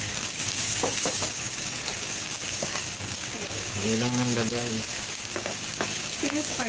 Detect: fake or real fake